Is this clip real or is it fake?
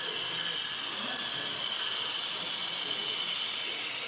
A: real